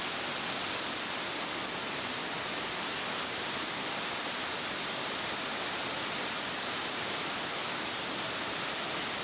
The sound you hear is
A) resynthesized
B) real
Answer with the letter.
B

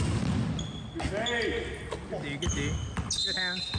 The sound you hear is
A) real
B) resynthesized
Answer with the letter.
A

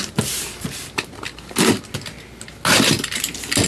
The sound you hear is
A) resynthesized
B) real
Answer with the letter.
B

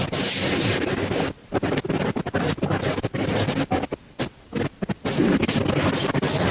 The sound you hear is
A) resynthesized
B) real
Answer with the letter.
B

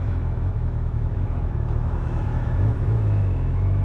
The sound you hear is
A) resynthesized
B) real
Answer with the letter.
A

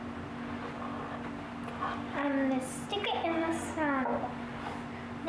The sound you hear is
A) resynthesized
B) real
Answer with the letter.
B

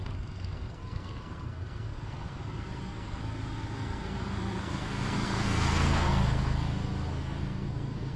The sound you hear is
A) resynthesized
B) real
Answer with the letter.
A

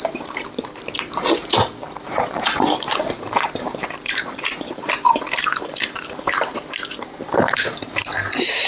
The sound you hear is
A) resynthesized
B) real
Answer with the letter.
A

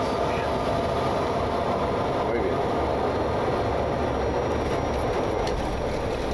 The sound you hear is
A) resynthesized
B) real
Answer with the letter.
B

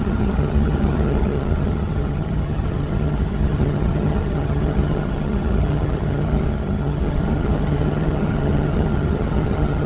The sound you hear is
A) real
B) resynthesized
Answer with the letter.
B